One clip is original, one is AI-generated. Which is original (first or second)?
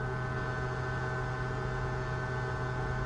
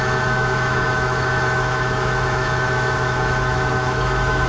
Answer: first